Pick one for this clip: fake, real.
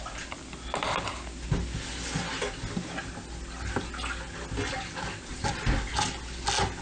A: real